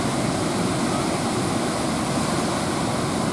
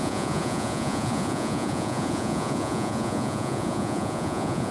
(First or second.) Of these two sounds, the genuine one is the first